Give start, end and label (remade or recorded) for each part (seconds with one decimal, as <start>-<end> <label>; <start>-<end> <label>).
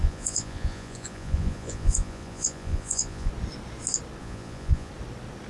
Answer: 0.0-3.3 remade; 3.3-4.2 recorded; 4.2-4.9 remade; 4.9-5.5 recorded